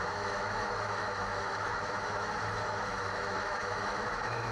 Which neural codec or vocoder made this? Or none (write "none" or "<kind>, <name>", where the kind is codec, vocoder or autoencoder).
autoencoder, DAC-VAE